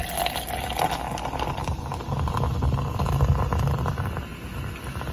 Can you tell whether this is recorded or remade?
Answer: recorded